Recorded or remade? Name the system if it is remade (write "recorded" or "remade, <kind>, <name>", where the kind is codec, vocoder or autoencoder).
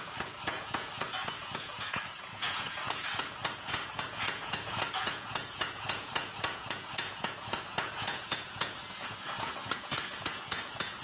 remade, vocoder, Vocos